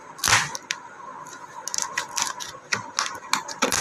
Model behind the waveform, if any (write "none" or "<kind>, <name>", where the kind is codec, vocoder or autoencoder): none